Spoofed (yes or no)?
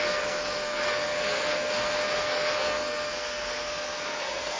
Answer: yes